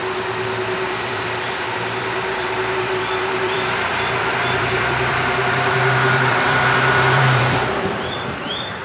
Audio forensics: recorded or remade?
remade